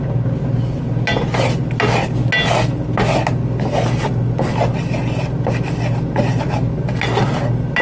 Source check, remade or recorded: recorded